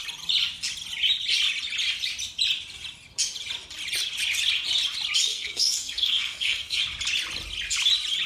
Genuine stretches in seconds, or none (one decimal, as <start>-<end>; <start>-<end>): 0.0-5.3; 6.8-8.3